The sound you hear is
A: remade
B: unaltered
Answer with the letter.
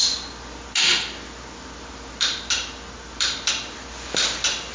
B